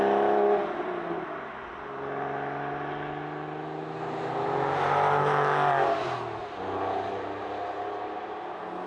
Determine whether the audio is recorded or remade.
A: recorded